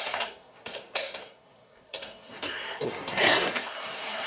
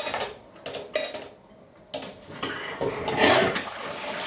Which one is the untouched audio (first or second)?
second